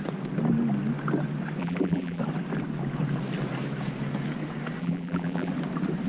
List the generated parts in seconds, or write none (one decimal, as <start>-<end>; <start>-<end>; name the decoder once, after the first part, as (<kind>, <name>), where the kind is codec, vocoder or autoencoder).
1.6-2.2 (vocoder, BigVGAN v2); 4.8-5.5